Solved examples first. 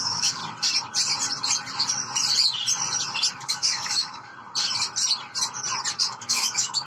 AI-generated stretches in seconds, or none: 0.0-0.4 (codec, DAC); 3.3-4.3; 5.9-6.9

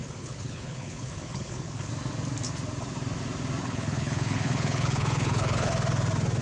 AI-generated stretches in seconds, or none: 0.0-1.9 (codec, HILCodec); 3.6-5.7

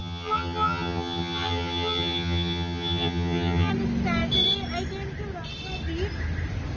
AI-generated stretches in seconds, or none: 0.0-3.7 (vocoder, HiFi-GAN)

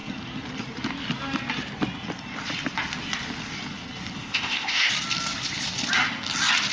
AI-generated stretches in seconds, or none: 4.2-4.9 (codec, ZipCodec)